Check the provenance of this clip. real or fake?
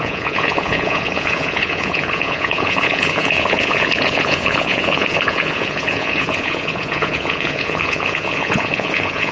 fake